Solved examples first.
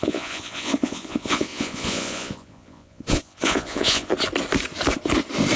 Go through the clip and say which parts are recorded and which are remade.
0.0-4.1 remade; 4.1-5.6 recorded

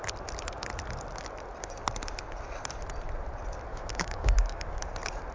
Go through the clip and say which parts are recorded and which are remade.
0.0-3.7 recorded; 3.7-4.8 remade; 4.8-5.3 recorded

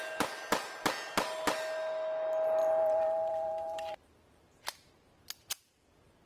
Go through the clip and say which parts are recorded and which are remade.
0.0-2.6 recorded; 2.6-4.9 remade; 4.9-6.3 recorded

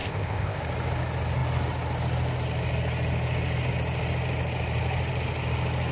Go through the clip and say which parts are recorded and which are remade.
0.0-0.6 remade; 0.6-5.9 recorded

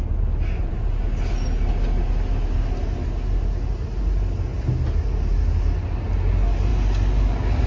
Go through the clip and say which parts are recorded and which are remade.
0.0-7.7 recorded

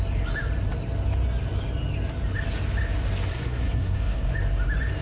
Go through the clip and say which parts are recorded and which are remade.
0.0-3.3 recorded; 3.3-4.3 remade; 4.3-5.0 recorded

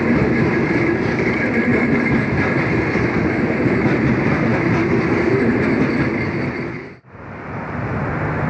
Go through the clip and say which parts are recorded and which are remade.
0.0-8.5 recorded

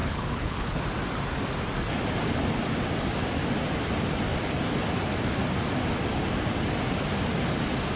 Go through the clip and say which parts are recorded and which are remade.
0.0-0.8 remade; 0.8-8.0 recorded